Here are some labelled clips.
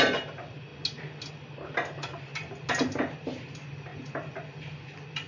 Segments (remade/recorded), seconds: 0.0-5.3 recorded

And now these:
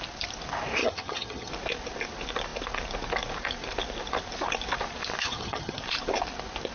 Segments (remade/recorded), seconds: 0.0-0.8 recorded; 0.8-1.5 remade; 1.5-5.2 recorded; 5.2-5.8 remade; 5.8-6.7 recorded

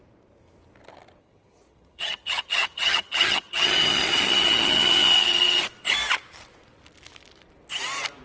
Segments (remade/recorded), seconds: 0.0-1.2 recorded; 1.2-5.6 remade; 5.6-8.2 recorded

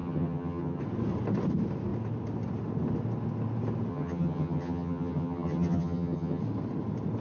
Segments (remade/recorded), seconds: 0.0-0.8 remade; 0.8-3.9 recorded; 3.9-6.4 remade; 6.4-7.2 recorded

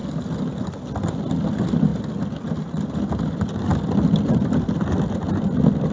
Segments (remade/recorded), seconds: 0.0-5.9 recorded

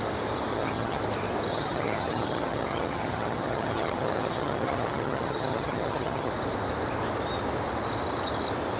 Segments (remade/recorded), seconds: 0.0-0.5 recorded; 0.5-1.0 remade; 1.0-1.5 recorded; 1.5-6.3 remade; 6.3-8.8 recorded

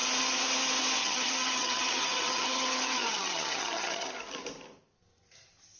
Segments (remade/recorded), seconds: 0.0-1.0 recorded; 1.0-4.1 remade; 4.1-5.8 recorded

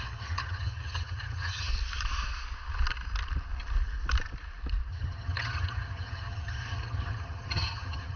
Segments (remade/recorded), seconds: 0.0-1.7 remade; 1.7-4.9 recorded; 4.9-8.2 remade